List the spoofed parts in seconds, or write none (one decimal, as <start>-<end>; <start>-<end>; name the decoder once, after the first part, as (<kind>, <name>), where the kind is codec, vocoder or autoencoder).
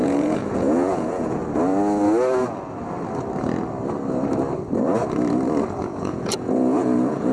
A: 0.0-1.4 (vocoder, Vocos); 5.8-7.3